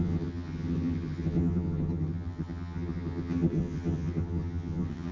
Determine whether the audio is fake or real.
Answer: fake